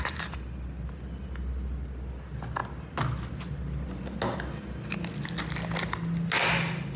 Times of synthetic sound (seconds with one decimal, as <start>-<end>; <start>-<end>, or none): none